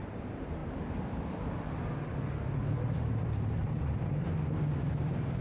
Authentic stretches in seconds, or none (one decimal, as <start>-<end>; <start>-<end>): 0.6-3.8